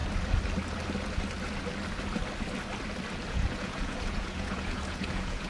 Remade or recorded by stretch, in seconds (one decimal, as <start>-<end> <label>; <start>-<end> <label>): 0.0-3.3 recorded; 3.3-5.5 remade